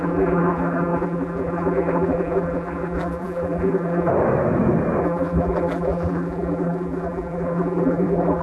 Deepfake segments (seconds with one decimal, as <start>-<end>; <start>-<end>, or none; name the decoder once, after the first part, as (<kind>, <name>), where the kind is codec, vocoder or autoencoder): 0.0-4.1 (vocoder, BigVGAN v2); 5.0-8.4